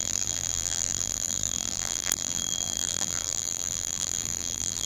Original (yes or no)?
no